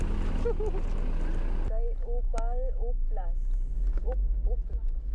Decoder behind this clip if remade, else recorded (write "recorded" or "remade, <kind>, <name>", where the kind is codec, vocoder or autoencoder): recorded